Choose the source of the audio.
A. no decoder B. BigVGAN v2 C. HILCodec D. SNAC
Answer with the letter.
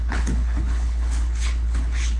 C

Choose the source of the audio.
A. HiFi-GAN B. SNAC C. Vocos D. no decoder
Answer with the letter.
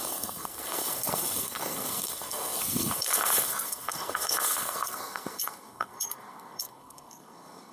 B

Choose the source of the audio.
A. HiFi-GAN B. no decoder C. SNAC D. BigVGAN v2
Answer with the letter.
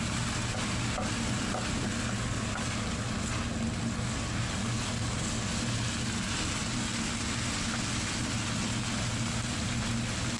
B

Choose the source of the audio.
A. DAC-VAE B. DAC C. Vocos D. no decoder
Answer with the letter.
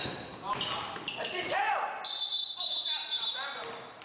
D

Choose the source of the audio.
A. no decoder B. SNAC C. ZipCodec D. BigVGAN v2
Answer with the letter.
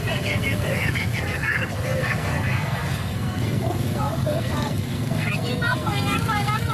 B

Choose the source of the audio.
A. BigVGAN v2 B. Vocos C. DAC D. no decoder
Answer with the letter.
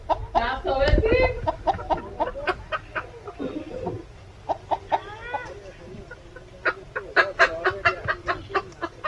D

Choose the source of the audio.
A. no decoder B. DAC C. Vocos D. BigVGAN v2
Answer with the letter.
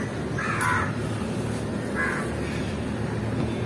A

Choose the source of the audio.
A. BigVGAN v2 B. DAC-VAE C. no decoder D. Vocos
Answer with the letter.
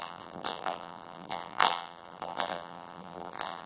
A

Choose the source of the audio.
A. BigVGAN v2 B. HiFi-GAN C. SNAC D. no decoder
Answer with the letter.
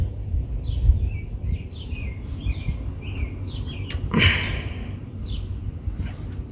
D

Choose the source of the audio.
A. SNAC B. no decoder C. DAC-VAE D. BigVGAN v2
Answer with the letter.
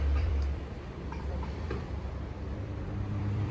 D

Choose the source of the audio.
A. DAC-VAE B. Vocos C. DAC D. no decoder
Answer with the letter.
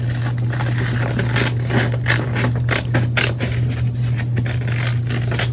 D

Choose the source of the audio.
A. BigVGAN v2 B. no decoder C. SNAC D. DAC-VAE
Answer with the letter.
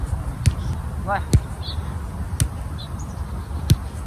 B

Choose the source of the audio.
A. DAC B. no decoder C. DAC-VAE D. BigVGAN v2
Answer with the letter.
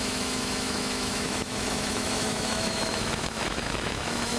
C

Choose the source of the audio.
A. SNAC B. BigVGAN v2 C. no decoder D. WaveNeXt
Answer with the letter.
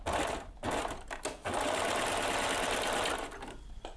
C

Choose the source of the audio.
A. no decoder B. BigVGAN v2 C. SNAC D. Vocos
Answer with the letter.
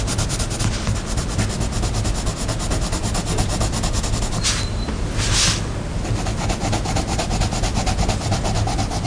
A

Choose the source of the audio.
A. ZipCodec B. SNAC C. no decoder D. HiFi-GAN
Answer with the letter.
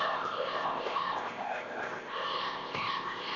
A